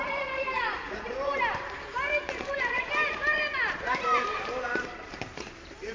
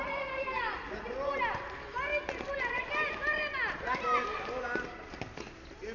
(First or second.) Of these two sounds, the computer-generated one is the first